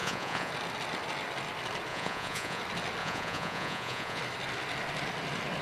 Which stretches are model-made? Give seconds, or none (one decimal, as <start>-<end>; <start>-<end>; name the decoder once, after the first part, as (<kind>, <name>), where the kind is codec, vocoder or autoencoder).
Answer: 0.0-0.5 (vocoder, Vocos); 1.9-2.6; 3.0-4.2